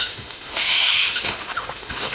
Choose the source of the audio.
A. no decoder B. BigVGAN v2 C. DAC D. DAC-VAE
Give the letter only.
D